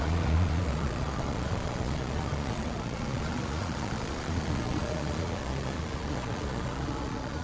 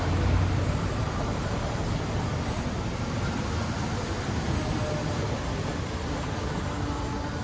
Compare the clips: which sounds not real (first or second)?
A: first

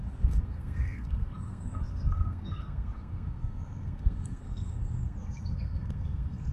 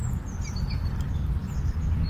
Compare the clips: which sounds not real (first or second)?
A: first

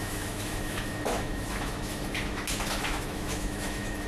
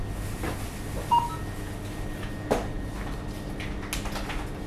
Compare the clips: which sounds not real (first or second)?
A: first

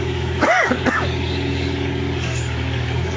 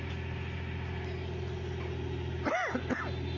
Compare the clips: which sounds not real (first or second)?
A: first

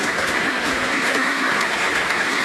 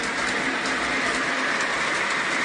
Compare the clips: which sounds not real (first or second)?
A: first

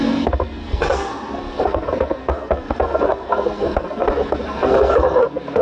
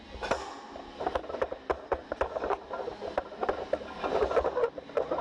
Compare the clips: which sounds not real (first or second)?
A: first